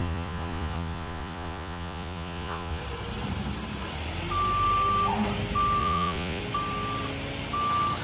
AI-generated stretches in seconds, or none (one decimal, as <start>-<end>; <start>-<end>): 0.0-2.8; 5.8-6.4